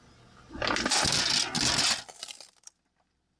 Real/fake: real